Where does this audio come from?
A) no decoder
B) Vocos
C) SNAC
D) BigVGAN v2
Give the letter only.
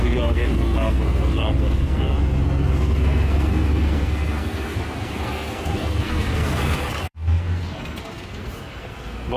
C